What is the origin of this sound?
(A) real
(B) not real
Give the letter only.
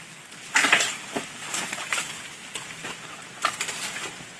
A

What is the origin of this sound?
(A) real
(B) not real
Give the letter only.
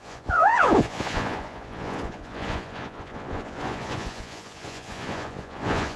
B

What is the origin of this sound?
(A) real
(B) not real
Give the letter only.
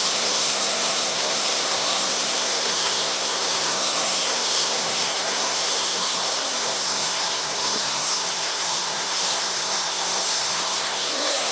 B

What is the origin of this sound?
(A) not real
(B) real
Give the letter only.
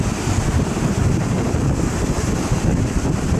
B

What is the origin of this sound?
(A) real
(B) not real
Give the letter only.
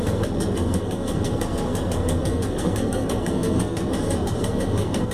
B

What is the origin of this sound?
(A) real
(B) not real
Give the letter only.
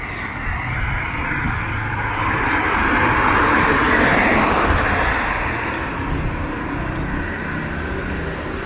A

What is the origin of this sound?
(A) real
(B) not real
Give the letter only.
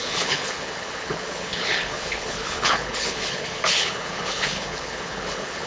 B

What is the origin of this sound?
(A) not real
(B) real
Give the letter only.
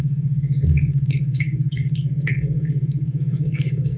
A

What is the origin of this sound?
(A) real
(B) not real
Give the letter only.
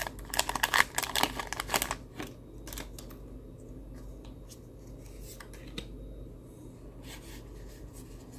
A